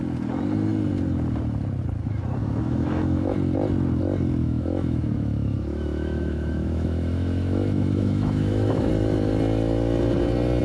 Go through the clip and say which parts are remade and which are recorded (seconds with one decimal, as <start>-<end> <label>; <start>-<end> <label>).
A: 0.0-2.4 recorded; 2.4-3.3 remade; 3.3-4.4 recorded; 4.4-8.9 remade; 8.9-10.6 recorded